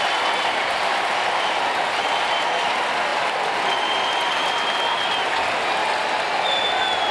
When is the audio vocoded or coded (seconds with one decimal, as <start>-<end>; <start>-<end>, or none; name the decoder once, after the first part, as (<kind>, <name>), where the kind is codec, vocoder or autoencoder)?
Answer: none